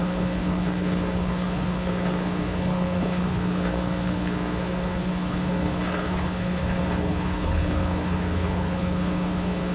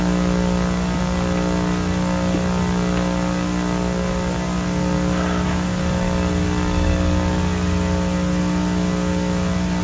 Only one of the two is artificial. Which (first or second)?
first